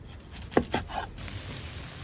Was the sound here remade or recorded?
recorded